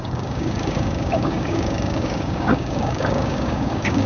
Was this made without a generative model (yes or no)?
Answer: no